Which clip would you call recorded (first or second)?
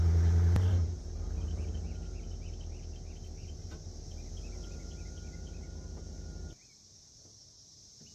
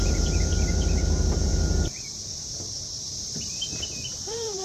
first